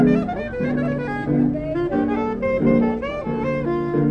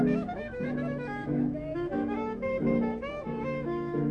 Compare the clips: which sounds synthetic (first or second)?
second